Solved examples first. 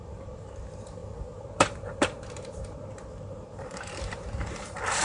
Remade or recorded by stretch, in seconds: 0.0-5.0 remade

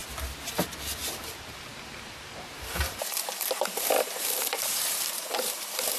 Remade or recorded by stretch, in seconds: 0.0-1.0 recorded; 1.0-6.0 remade

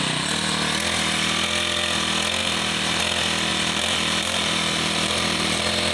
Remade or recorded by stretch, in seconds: 0.0-2.4 recorded; 2.4-3.0 remade; 3.0-3.5 recorded; 3.5-5.9 remade